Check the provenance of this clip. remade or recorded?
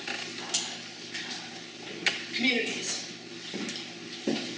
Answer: recorded